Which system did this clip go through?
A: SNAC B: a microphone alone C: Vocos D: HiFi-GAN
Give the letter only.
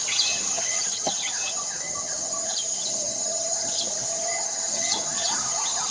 D